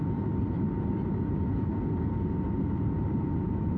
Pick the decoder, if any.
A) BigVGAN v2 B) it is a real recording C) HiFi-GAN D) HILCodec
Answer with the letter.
B